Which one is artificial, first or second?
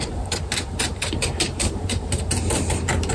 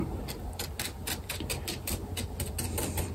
first